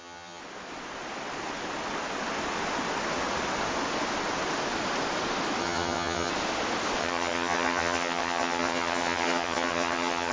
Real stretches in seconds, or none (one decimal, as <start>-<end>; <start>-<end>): 0.4-5.6; 6.3-7.0